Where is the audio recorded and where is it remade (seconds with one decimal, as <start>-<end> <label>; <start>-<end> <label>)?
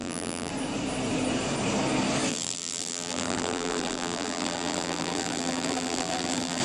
0.0-0.5 remade; 0.5-2.3 recorded; 2.3-6.6 remade